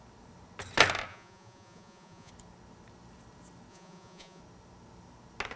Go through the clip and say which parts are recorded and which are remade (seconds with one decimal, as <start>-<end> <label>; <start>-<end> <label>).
0.0-1.1 recorded; 1.1-2.3 remade; 2.3-3.7 recorded; 3.7-4.4 remade; 4.4-5.6 recorded